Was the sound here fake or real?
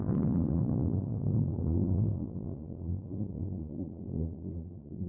fake